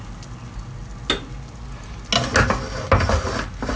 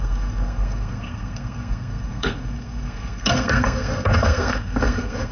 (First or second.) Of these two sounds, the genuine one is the first